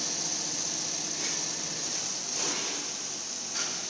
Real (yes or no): yes